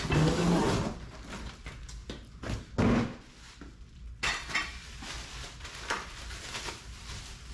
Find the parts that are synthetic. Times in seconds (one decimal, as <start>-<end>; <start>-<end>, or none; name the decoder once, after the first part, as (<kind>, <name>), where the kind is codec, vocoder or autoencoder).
none